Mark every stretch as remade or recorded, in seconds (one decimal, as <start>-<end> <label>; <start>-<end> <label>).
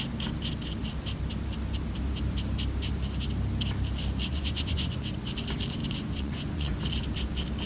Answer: 0.0-4.3 recorded; 4.3-5.3 remade; 5.3-5.8 recorded; 5.8-6.8 remade; 6.8-7.7 recorded